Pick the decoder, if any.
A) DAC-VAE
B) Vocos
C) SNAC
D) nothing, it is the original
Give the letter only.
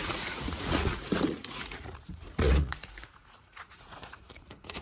B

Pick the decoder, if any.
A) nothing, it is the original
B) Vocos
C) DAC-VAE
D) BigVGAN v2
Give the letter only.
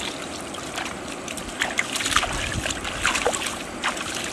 A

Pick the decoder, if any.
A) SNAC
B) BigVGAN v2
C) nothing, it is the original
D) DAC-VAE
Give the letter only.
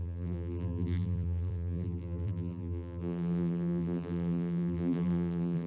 B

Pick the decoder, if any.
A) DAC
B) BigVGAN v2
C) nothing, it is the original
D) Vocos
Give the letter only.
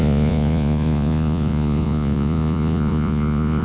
D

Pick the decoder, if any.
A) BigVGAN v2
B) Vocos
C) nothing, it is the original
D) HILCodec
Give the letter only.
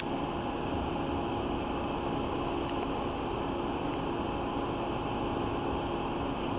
C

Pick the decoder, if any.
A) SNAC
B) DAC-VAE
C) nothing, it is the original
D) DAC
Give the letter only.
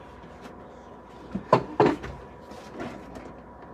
C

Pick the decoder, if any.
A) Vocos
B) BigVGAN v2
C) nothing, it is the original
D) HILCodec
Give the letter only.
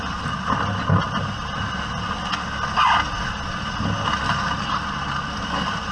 C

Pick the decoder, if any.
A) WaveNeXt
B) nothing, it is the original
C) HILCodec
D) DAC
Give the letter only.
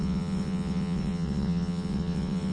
A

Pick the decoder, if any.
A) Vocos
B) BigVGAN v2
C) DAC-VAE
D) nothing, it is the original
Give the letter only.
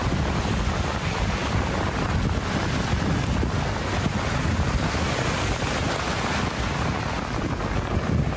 D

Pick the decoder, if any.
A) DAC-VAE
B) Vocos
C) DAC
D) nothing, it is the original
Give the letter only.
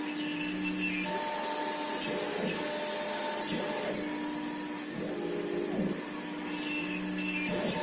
D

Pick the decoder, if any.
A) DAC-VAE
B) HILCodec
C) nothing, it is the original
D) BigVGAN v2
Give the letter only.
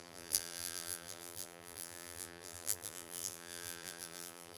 D